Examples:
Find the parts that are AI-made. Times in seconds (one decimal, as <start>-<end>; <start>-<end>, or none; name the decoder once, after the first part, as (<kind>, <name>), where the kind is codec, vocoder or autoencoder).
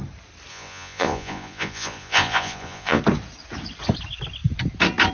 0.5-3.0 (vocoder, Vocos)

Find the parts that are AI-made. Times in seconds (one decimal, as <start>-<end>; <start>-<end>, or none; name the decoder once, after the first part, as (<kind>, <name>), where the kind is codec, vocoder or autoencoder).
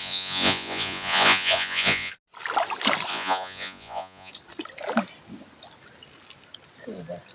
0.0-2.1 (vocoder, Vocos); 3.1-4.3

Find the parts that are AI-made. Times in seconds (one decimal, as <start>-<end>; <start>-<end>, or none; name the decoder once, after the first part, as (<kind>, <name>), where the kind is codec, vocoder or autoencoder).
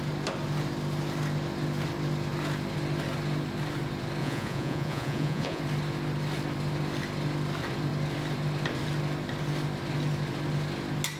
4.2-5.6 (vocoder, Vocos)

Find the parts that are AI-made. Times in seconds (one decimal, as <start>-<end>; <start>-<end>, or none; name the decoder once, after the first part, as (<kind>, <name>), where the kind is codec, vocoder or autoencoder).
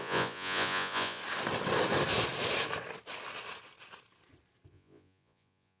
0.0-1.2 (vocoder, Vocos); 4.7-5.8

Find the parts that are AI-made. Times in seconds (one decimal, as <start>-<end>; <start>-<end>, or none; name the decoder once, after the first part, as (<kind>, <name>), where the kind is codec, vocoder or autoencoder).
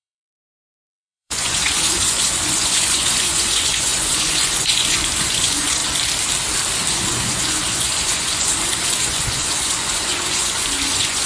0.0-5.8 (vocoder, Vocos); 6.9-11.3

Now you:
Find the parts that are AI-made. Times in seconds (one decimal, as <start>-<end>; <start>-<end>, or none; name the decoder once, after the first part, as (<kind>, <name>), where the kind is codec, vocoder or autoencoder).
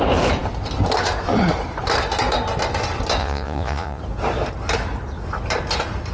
3.2-4.0 (vocoder, Vocos)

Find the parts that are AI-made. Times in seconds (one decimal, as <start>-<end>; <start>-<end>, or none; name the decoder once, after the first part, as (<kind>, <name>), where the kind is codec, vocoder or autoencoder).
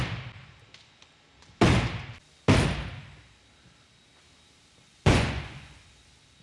4.9-5.8 (vocoder, Vocos)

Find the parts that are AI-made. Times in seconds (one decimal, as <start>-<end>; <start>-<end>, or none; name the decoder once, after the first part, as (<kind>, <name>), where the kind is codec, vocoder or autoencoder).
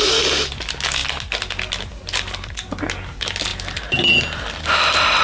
none